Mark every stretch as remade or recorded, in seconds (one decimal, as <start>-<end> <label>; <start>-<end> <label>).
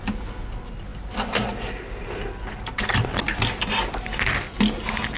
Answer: 0.0-5.2 recorded